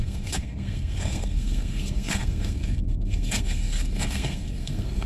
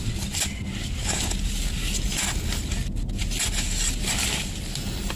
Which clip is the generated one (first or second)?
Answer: first